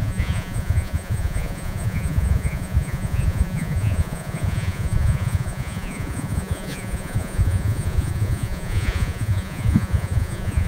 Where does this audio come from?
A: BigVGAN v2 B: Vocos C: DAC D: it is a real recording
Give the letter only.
B